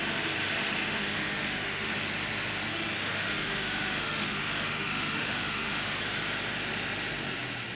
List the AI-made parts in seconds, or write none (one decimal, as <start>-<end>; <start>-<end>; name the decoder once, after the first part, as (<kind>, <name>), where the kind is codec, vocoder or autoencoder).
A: 0.8-1.9 (autoencoder, DAC-VAE); 2.7-6.0